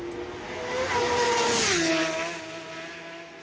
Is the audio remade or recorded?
recorded